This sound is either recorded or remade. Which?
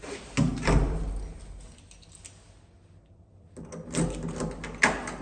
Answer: recorded